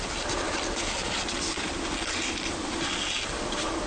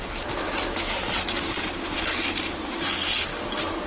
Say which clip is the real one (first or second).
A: second